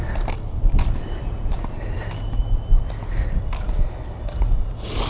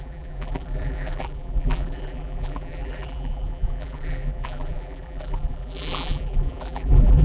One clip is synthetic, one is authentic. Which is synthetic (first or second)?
second